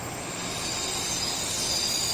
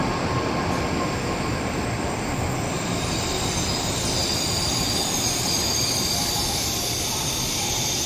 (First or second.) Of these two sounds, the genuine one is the first